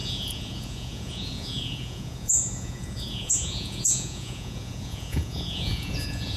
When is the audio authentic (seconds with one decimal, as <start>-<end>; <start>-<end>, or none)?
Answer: none